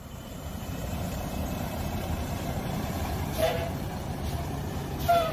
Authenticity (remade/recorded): remade